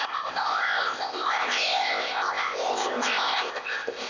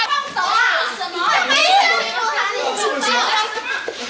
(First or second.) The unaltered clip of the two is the second